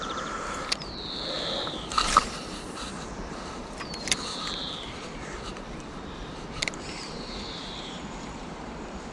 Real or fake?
fake